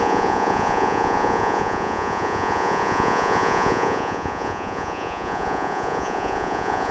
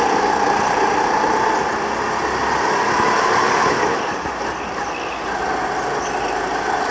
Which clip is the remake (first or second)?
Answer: first